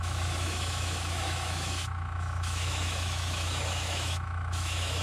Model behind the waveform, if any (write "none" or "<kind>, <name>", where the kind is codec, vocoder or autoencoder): autoencoder, DAC-VAE